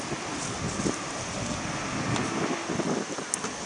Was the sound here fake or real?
real